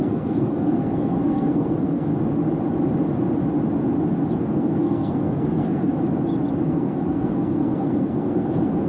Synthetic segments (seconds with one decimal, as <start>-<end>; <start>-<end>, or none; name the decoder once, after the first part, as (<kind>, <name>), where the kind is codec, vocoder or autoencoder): 0.0-2.1 (codec, SNAC); 4.4-5.9; 6.6-8.9